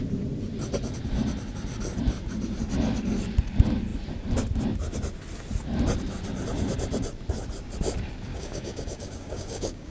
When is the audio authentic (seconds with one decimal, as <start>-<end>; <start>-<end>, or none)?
0.0-8.3